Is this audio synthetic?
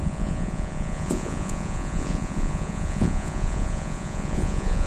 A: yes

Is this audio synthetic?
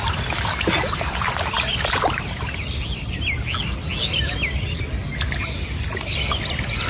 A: no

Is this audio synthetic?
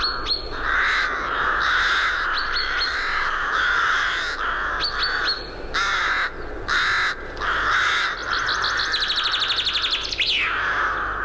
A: no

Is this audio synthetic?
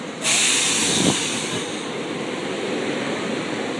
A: no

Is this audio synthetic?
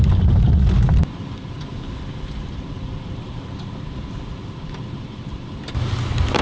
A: no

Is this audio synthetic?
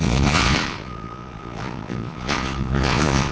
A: yes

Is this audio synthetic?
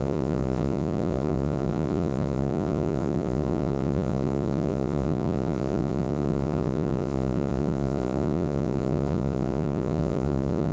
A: yes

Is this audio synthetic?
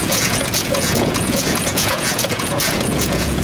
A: yes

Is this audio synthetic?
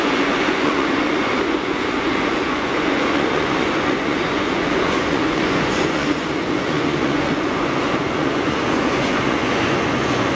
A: yes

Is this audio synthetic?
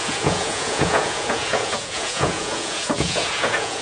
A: yes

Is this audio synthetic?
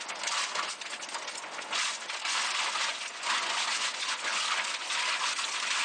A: yes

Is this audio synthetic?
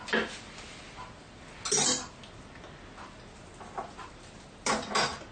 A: no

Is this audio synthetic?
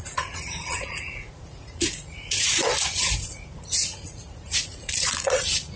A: yes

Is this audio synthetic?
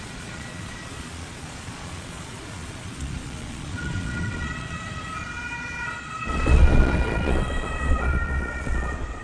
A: yes